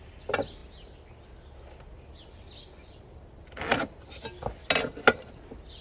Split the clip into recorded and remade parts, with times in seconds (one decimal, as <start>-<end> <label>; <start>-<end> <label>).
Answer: 0.0-5.8 recorded